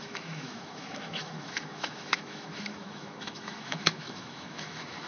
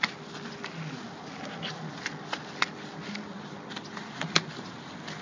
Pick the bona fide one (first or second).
second